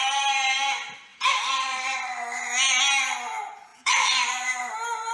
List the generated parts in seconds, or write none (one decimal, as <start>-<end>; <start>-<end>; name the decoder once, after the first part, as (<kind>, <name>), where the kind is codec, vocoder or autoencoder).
1.1-2.8 (vocoder, BigVGAN v2); 3.7-5.1